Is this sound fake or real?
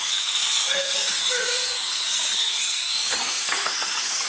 fake